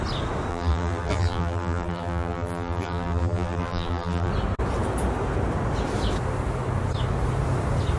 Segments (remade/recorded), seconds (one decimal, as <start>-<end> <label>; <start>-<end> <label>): 0.0-0.5 recorded; 0.5-4.3 remade; 4.3-8.0 recorded